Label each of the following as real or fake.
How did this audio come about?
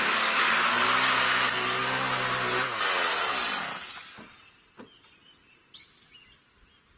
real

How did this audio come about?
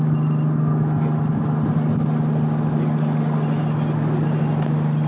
real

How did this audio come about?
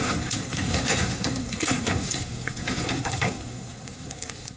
fake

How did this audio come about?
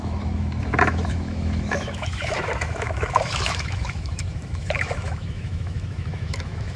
fake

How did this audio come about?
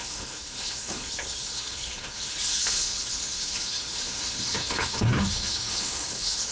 fake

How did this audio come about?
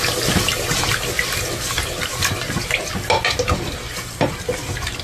real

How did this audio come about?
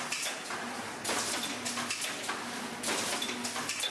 real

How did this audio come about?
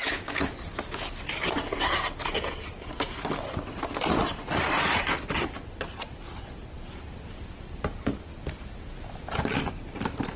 real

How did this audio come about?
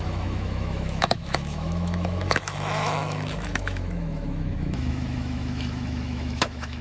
fake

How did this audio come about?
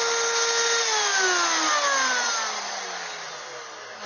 real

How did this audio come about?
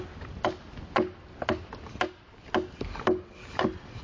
real